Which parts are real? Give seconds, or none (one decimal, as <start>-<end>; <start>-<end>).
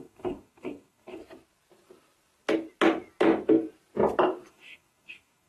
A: 1.2-4.5